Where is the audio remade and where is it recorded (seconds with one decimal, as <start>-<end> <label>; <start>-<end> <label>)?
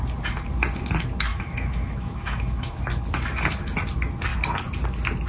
0.0-1.3 recorded; 1.3-2.8 remade; 2.8-5.3 recorded